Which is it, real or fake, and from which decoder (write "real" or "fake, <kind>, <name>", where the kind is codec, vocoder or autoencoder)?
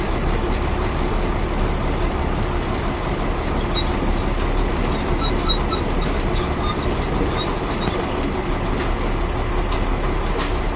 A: real